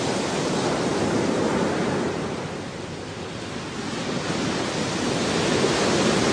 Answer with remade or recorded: recorded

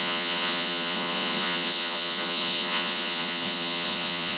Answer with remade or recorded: remade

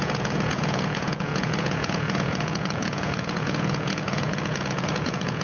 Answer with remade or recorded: remade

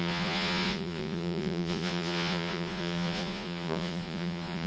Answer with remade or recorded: remade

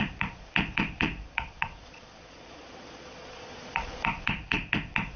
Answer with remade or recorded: remade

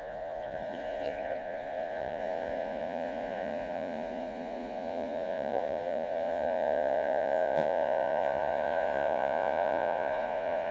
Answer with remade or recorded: remade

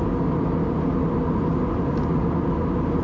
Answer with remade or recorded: recorded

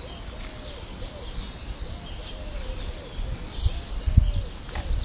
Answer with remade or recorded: recorded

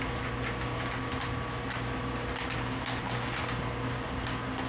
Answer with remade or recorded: recorded